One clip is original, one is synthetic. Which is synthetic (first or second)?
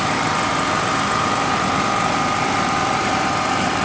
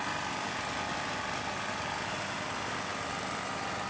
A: first